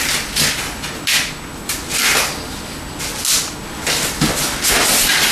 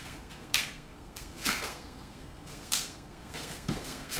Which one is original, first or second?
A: first